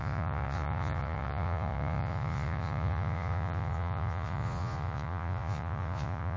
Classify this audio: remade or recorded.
remade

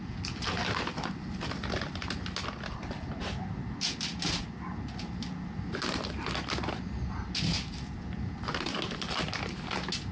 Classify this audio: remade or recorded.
recorded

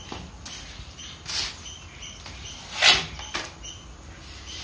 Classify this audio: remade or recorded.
recorded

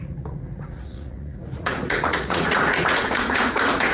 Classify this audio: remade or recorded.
remade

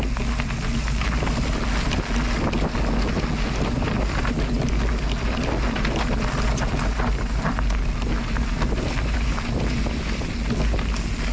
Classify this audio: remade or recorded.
recorded